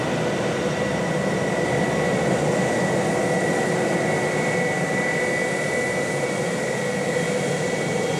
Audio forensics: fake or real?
real